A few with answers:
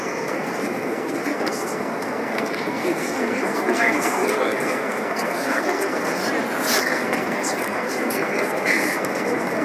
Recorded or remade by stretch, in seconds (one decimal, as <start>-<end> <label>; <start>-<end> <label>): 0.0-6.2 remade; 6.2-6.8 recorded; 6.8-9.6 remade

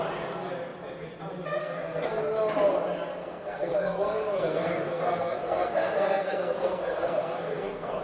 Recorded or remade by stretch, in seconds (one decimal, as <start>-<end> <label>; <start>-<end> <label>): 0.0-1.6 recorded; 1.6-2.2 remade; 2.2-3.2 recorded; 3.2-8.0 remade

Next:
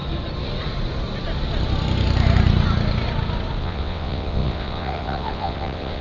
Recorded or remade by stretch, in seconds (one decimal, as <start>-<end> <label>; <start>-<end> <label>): 0.0-3.6 recorded; 3.6-6.0 remade